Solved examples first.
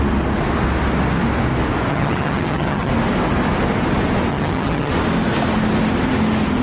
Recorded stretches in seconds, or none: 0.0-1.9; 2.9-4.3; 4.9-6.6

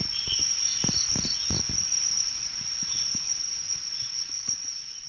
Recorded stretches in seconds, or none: 0.0-5.1

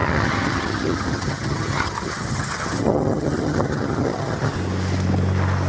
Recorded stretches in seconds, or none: 4.5-5.7

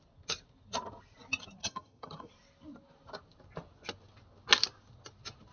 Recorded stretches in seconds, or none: 0.0-1.6; 2.3-5.5

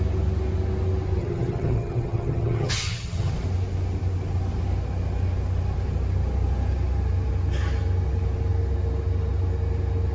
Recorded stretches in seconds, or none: 0.0-1.2; 3.3-10.1